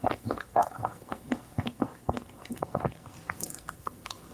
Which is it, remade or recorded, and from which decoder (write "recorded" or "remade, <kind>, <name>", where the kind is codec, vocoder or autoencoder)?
remade, codec, SNAC